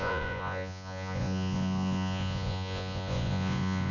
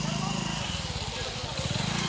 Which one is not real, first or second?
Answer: first